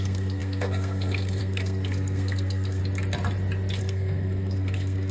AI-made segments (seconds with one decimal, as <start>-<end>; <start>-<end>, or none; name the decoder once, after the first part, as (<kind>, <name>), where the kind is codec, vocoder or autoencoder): 0.0-2.8 (codec, SNAC); 3.8-5.1